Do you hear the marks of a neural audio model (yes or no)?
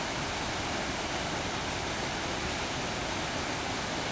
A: no